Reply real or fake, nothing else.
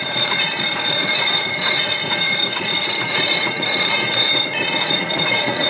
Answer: fake